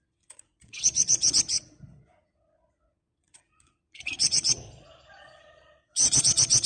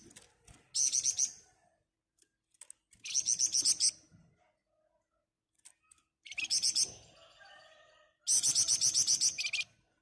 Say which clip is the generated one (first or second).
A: first